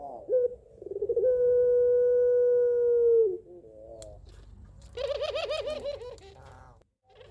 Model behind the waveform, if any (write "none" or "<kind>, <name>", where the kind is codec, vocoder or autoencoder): none